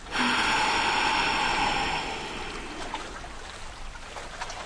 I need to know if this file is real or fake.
real